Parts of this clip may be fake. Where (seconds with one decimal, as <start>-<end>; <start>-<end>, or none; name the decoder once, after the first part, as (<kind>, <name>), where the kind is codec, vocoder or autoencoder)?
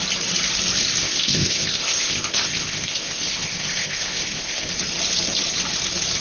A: 1.0-4.7 (codec, ZipCodec)